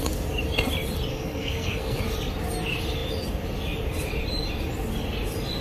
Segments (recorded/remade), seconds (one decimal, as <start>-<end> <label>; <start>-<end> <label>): 0.0-1.1 recorded; 1.1-2.0 remade; 2.0-5.6 recorded

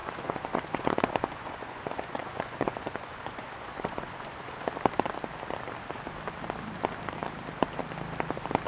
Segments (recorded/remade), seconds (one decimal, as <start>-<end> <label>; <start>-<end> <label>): 0.0-4.7 remade; 4.7-8.7 recorded

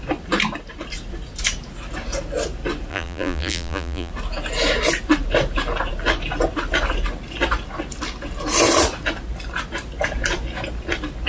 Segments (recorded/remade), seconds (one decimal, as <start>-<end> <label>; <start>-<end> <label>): 0.0-2.9 recorded; 2.9-4.1 remade; 4.1-11.3 recorded

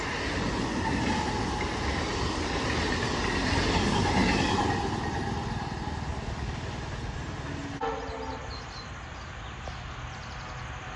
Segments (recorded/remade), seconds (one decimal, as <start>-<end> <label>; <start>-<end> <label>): 0.0-11.0 recorded

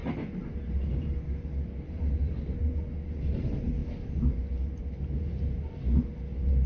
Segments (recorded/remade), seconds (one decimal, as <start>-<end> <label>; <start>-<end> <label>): 0.0-6.7 recorded

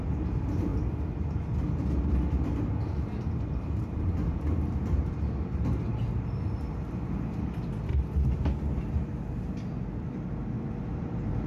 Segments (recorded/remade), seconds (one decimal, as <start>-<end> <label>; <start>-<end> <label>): 0.0-0.7 remade; 0.7-2.7 recorded; 2.7-7.9 remade; 7.9-10.8 recorded; 10.8-11.5 remade